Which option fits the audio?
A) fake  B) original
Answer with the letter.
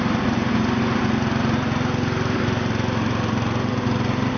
B